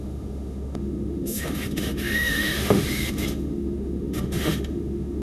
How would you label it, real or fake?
fake